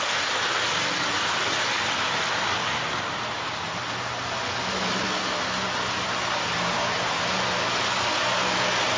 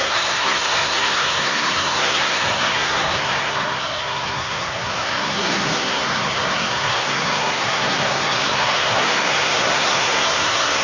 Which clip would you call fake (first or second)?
second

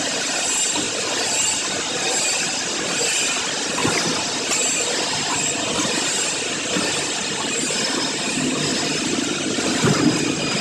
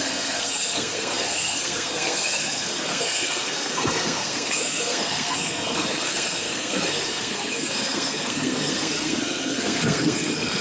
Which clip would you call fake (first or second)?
second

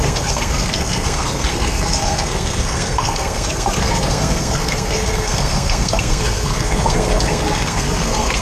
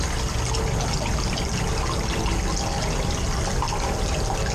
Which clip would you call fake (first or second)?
first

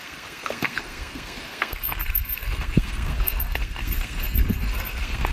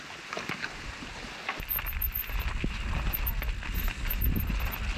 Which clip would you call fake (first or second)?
first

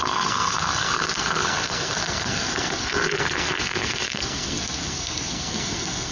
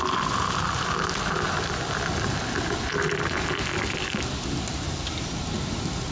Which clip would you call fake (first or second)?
first